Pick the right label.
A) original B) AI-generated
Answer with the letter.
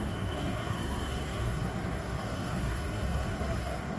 B